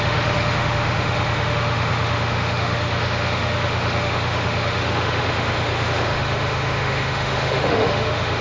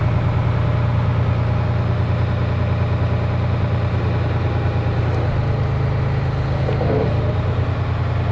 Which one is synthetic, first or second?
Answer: first